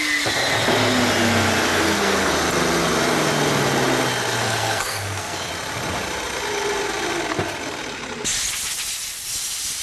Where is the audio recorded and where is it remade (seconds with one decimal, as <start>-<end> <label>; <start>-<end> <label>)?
0.0-1.7 recorded; 1.7-2.3 remade; 2.3-4.4 recorded; 4.4-5.5 remade; 5.5-9.8 recorded

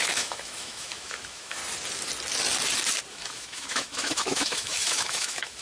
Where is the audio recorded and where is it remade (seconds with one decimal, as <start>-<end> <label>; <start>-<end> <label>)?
0.0-1.6 remade; 1.6-3.1 recorded; 3.1-5.6 remade

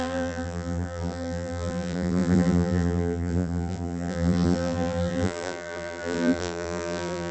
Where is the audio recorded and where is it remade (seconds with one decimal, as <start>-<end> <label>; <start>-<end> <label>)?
0.0-7.3 remade